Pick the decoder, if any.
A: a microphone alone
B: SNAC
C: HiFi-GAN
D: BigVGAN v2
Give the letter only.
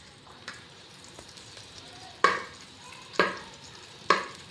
D